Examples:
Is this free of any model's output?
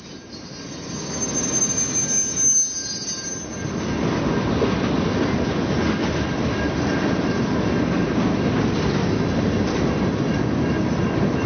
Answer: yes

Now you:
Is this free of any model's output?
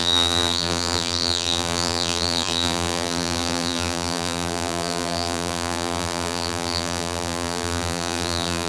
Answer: no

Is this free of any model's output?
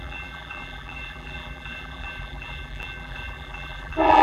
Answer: no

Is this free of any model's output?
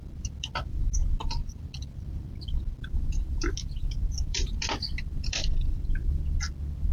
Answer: no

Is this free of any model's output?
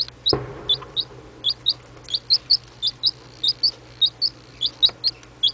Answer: yes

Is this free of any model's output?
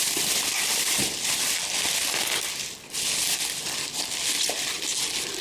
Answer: yes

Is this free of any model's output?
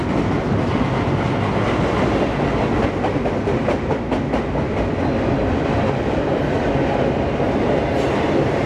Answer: yes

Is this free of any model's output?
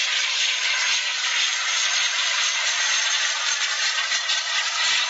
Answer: no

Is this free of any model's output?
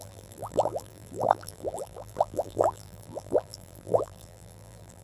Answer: no